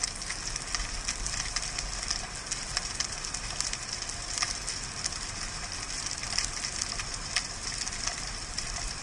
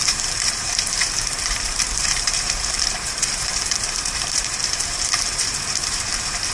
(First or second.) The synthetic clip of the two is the second